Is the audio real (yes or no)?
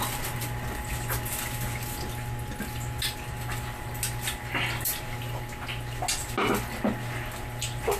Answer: yes